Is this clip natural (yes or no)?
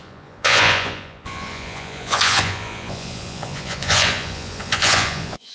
no